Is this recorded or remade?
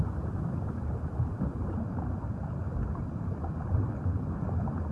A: recorded